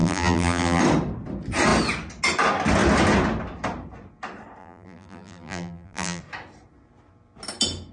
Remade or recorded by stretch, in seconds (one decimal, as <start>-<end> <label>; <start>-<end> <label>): 0.0-0.8 remade; 0.8-4.6 recorded; 4.6-6.2 remade; 6.2-7.9 recorded